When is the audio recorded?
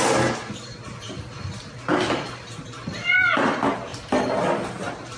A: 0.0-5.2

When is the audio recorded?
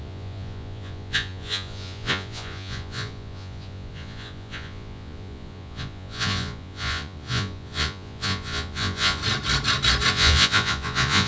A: 9.2-10.1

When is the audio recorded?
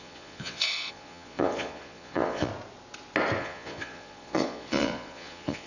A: 2.5-3.4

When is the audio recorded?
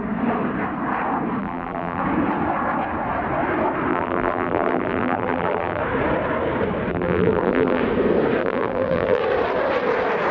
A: 0.0-1.4; 2.0-3.9; 5.8-6.9; 7.8-8.4; 9.2-10.3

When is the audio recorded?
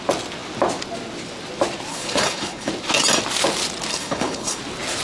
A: 0.0-1.9; 2.7-3.9; 4.6-5.0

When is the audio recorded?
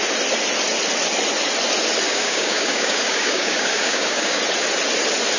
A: 0.0-2.1; 4.4-5.4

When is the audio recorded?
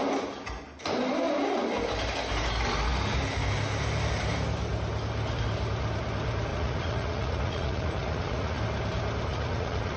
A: 0.0-6.5; 8.6-9.3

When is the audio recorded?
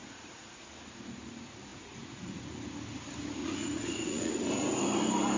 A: 0.7-1.7; 2.4-3.4; 4.3-5.4